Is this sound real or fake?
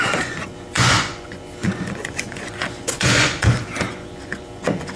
fake